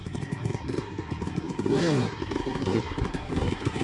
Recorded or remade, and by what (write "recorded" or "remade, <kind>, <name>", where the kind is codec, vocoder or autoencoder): remade, codec, SNAC